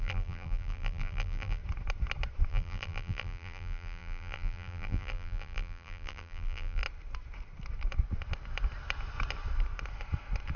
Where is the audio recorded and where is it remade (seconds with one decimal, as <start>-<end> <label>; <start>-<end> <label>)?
0.0-1.6 remade; 1.6-2.5 recorded; 2.5-6.8 remade; 6.8-10.6 recorded